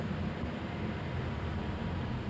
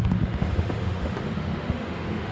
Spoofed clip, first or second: second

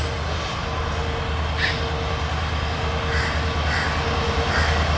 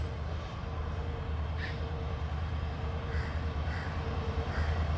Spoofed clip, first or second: second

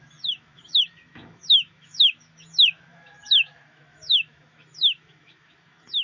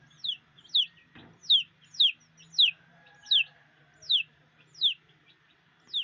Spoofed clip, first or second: first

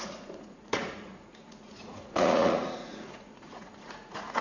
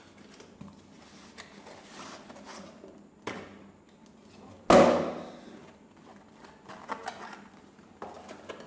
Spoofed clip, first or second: first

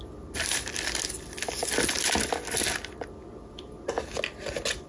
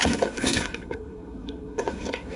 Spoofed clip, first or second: second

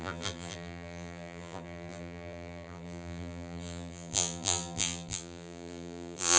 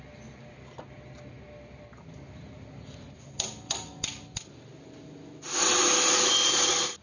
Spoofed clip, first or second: first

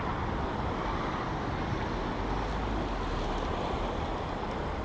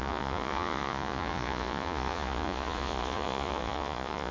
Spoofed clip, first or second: second